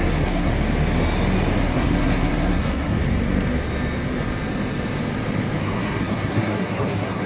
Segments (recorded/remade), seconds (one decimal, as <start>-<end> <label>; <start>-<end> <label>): 0.0-0.5 remade; 0.5-1.6 recorded; 1.6-3.0 remade; 3.0-5.6 recorded; 5.6-7.3 remade